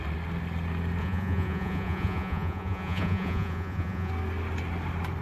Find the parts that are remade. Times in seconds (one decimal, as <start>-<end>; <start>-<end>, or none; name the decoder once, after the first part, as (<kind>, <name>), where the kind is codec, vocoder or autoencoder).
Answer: 1.0-4.1 (vocoder, Vocos)